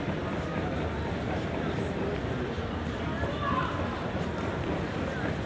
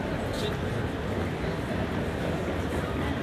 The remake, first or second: first